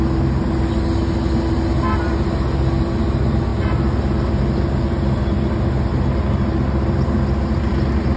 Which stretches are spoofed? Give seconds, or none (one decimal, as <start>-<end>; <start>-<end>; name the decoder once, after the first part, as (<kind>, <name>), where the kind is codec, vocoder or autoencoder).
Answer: 3.5-4.0 (vocoder, BigVGAN v2)